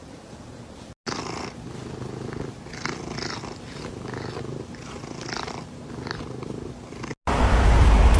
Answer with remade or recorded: recorded